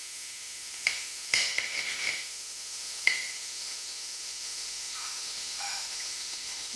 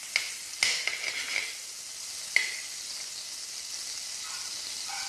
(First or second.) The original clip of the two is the second